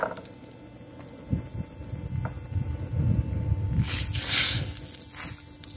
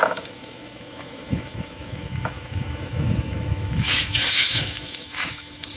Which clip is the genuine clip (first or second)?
first